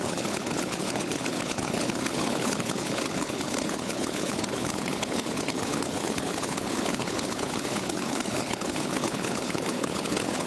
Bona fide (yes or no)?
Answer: no